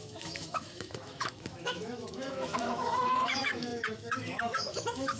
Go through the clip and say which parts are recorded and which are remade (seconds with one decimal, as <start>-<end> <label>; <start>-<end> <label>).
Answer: 0.0-5.2 remade